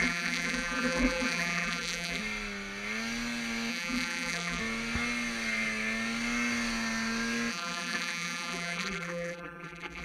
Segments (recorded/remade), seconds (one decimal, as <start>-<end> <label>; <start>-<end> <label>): 0.0-2.2 remade; 2.2-3.7 recorded; 3.7-4.6 remade; 4.6-7.5 recorded; 7.5-10.0 remade

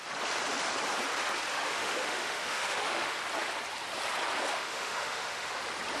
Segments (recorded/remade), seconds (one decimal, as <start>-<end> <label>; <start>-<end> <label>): 0.0-1.5 recorded; 1.5-3.2 remade; 3.2-4.5 recorded; 4.5-5.6 remade; 5.6-6.0 recorded

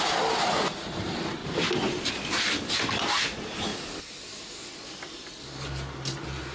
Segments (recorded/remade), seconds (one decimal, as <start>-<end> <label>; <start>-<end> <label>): 0.0-6.5 recorded

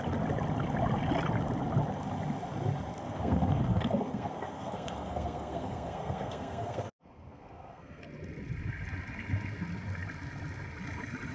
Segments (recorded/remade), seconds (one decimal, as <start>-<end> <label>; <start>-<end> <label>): 0.0-3.0 recorded; 3.0-8.0 remade; 8.0-11.3 recorded

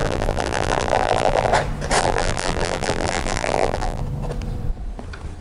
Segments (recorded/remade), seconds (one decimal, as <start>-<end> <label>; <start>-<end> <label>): 0.0-1.5 remade; 1.5-2.0 recorded; 2.0-4.0 remade; 4.0-5.4 recorded

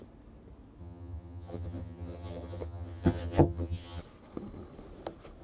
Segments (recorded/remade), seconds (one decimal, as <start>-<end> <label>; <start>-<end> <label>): 0.0-0.8 recorded; 0.8-4.0 remade; 4.0-5.4 recorded

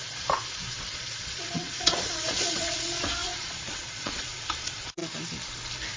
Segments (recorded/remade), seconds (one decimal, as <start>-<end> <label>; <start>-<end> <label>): 0.0-5.0 remade; 5.0-6.0 recorded

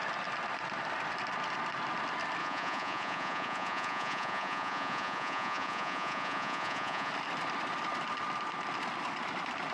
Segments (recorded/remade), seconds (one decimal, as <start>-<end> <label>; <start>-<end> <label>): 0.0-2.4 recorded; 2.4-7.1 remade; 7.1-9.7 recorded